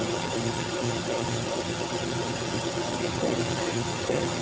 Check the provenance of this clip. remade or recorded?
remade